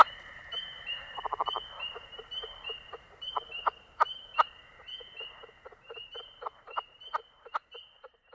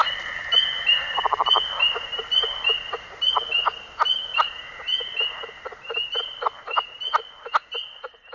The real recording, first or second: second